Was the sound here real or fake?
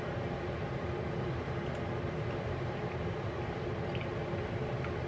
real